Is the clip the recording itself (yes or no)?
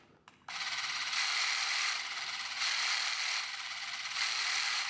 yes